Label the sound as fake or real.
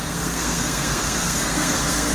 fake